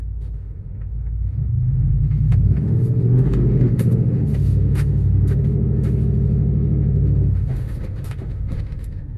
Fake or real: fake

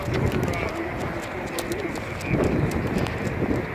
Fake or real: real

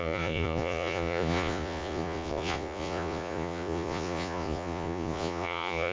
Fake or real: fake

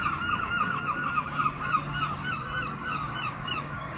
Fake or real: fake